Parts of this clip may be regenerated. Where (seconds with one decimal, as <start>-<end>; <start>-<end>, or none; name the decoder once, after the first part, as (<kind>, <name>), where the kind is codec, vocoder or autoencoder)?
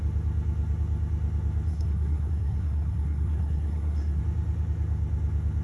1.7-4.2 (codec, SNAC)